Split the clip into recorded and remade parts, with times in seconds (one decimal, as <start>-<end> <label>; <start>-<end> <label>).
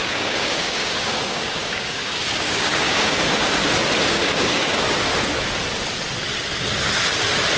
0.0-3.6 remade; 3.6-4.1 recorded; 4.1-5.1 remade; 5.1-7.6 recorded